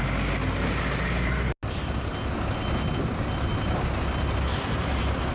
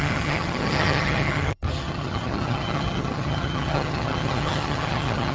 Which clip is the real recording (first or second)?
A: first